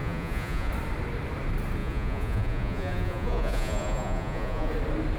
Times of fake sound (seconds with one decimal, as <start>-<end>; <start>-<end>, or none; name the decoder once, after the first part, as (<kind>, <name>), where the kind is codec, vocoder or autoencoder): 0.0-0.7 (vocoder, Vocos); 1.8-4.7